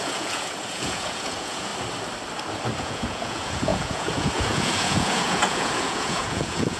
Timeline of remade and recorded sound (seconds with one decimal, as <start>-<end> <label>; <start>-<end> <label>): 0.0-1.7 remade; 1.7-2.8 recorded; 2.8-6.8 remade